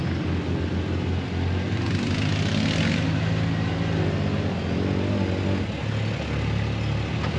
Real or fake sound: real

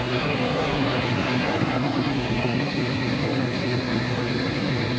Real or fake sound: fake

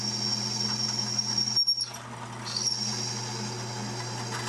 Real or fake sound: real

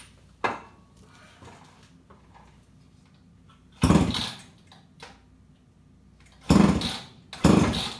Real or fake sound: real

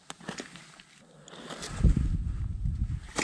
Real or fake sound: real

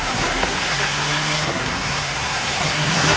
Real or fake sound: fake